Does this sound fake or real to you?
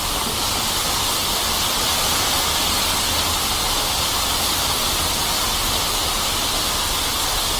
real